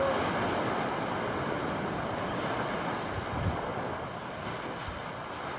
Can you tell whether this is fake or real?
real